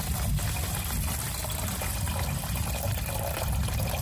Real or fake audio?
real